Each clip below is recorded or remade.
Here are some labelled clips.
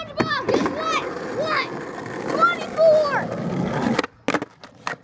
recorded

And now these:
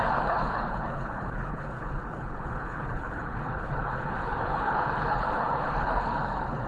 remade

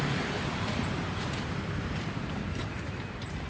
remade